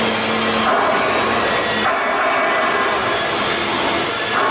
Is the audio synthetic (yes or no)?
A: no